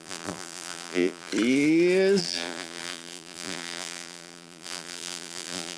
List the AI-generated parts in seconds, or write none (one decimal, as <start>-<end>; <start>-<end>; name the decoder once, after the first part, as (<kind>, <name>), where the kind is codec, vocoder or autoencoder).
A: 0.0-1.3 (vocoder, BigVGAN v2); 2.2-5.8